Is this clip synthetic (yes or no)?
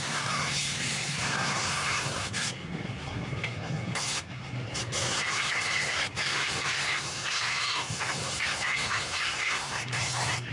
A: yes